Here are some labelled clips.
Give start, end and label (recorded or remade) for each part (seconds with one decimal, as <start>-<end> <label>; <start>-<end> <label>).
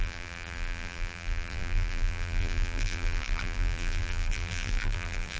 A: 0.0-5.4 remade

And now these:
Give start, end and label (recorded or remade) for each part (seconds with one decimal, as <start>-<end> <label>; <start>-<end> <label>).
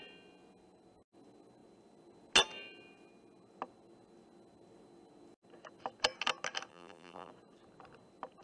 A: 0.0-6.7 recorded; 6.7-7.3 remade; 7.3-8.4 recorded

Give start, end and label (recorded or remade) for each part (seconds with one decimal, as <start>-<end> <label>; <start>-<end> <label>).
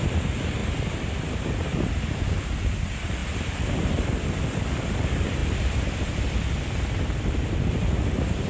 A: 0.0-0.6 remade; 0.6-1.3 recorded; 1.3-3.2 remade; 3.2-4.4 recorded; 4.4-8.5 remade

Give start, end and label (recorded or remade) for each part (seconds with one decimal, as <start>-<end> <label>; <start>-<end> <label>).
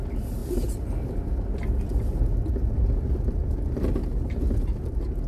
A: 0.0-5.3 recorded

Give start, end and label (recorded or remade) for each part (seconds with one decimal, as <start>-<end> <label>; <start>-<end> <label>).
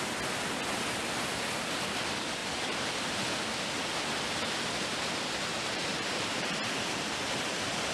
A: 0.0-2.4 recorded; 2.4-3.0 remade; 3.0-5.5 recorded; 5.5-7.9 remade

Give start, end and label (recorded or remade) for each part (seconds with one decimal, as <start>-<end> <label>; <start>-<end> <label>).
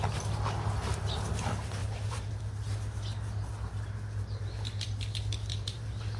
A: 0.0-1.8 recorded; 1.8-2.3 remade; 2.3-5.5 recorded; 5.5-6.2 remade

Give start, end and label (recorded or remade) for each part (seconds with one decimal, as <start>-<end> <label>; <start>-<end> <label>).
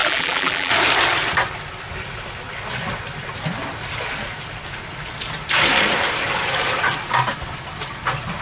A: 0.0-0.7 remade; 0.7-8.4 recorded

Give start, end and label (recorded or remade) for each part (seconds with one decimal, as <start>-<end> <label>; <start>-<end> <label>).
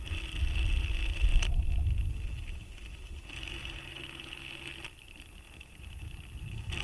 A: 0.0-1.3 recorded; 1.3-2.0 remade; 2.0-4.7 recorded; 4.7-5.9 remade; 5.9-6.8 recorded